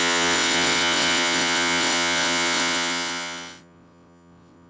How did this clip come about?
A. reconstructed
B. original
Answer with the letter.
A